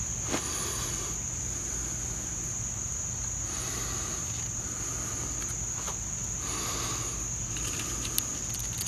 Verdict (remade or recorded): recorded